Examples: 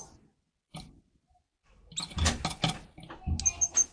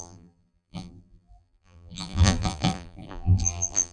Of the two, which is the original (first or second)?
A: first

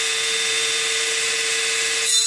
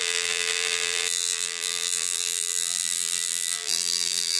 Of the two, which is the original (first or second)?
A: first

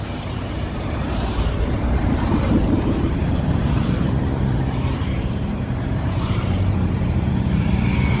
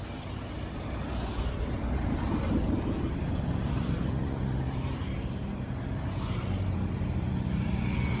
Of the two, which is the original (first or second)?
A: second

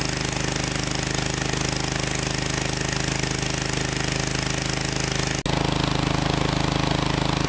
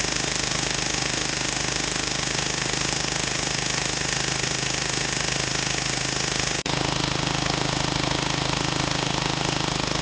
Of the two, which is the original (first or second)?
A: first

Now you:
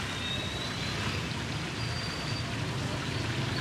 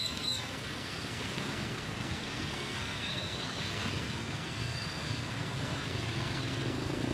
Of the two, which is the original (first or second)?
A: first